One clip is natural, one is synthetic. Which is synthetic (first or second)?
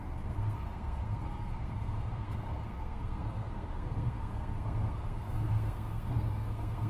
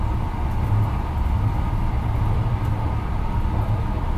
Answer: first